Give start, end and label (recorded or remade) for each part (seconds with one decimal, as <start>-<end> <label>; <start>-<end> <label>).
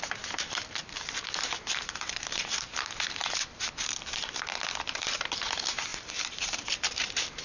0.0-0.8 recorded; 0.8-3.9 remade; 3.9-5.9 recorded; 5.9-6.6 remade; 6.6-7.4 recorded